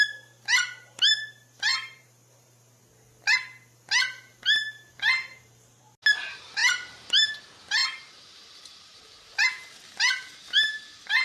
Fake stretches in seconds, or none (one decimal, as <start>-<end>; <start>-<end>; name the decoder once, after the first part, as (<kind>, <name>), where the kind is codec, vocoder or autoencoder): 1.7-2.8 (vocoder, BigVGAN v2); 4.3-5.8; 6.6-7.3; 7.8-9.7